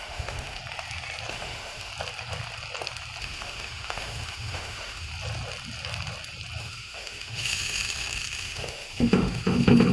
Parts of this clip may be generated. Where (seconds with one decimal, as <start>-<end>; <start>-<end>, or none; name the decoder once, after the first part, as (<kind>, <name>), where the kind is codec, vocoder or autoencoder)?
0.0-0.6 (autoencoder, DAC-VAE); 1.3-1.9; 3.2-5.1; 6.6-9.9